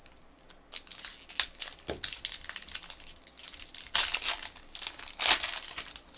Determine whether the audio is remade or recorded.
recorded